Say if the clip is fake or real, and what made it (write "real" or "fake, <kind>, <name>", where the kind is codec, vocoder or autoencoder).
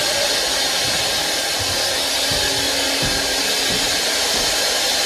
real